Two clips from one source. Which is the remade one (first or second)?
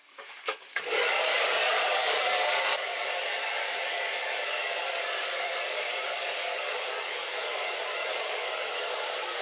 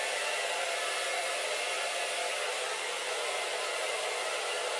first